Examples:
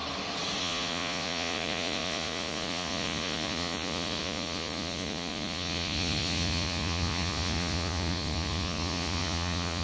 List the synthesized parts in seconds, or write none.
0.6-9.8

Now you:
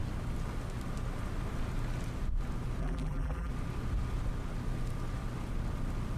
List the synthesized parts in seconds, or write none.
2.8-3.5

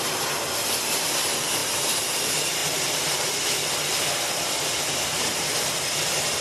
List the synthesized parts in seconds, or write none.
none